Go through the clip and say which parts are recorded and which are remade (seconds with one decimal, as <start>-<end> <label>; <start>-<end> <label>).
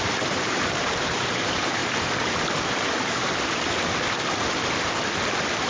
0.0-1.8 remade; 1.8-5.2 recorded; 5.2-5.7 remade